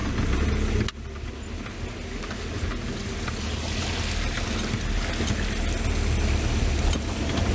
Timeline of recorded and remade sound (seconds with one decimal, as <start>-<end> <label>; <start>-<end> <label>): 0.0-7.5 recorded